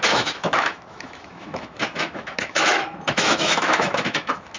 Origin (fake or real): fake